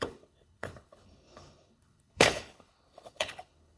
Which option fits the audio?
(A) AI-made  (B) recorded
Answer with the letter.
A